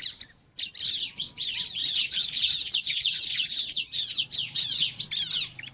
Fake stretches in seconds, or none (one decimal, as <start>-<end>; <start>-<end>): 1.8-5.0